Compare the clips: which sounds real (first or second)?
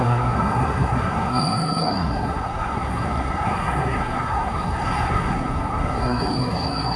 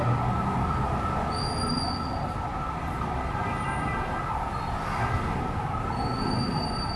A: second